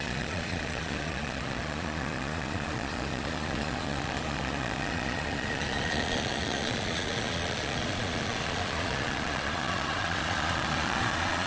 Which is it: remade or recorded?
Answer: remade